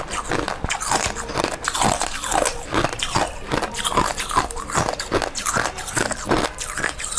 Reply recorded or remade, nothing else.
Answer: recorded